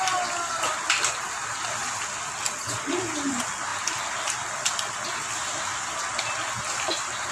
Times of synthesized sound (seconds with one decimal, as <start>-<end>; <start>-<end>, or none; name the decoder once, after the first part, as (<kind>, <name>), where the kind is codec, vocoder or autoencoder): none